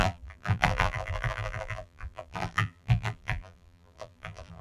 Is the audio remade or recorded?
remade